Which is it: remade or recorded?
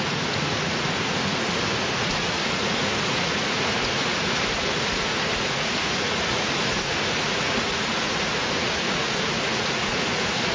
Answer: remade